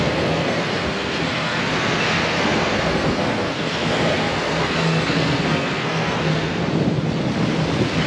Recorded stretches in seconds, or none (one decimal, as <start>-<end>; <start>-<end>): 6.6-8.1